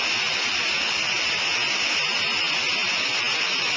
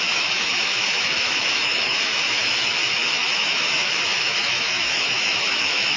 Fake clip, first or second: second